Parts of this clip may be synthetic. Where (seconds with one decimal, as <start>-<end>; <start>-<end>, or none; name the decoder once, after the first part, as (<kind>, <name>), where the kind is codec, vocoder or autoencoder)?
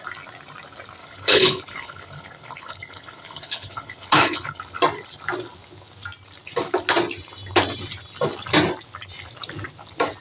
1.0-4.6 (codec, HILCodec)